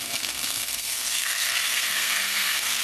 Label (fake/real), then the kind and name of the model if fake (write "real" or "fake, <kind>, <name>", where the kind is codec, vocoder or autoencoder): fake, codec, SNAC